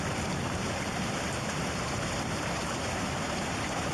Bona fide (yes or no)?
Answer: no